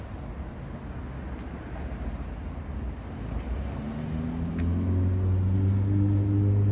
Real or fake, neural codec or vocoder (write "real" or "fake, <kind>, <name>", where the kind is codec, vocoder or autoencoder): real